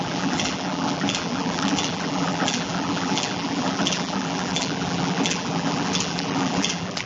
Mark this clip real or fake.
fake